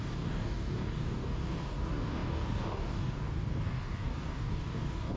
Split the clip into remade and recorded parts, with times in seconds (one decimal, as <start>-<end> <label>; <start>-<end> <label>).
0.0-5.2 remade